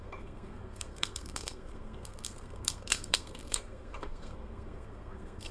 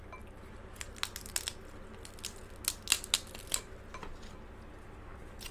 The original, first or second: second